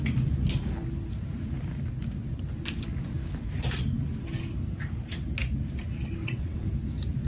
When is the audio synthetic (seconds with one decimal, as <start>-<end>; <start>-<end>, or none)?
6.2-6.7